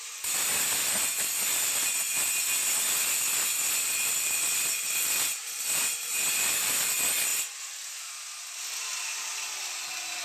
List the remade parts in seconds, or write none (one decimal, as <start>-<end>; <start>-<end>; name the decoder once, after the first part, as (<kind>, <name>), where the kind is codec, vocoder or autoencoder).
none